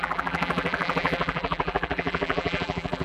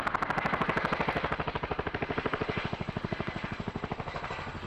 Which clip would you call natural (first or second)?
second